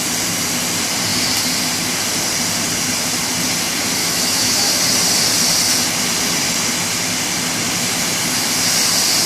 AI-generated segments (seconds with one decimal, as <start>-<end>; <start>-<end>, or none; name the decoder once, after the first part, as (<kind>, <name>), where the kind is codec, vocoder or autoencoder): 4.0-4.7 (autoencoder, DAC-VAE)